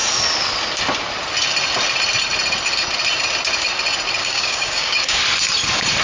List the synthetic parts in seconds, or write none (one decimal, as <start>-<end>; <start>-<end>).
4.2-5.2